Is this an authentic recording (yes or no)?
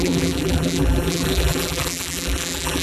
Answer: no